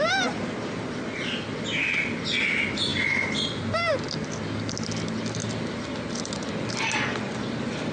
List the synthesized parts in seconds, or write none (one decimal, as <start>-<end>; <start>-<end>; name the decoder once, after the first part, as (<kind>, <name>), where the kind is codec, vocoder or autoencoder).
none